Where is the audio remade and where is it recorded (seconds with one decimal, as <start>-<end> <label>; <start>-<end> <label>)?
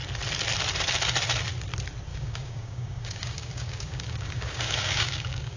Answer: 0.0-2.1 recorded; 2.1-5.6 remade